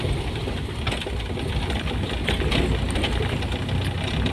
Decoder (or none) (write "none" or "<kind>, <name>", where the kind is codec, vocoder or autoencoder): none